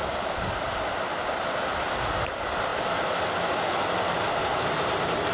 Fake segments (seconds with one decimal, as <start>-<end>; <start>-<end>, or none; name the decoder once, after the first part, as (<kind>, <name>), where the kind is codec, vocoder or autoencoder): none